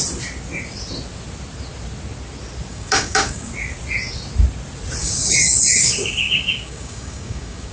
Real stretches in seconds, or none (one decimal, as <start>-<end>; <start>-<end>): 0.0-2.7; 3.5-5.0